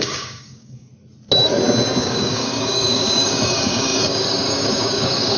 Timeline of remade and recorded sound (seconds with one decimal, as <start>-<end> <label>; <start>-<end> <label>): 0.0-0.9 remade; 0.9-2.0 recorded; 2.0-5.4 remade